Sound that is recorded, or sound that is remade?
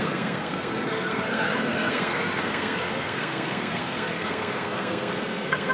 remade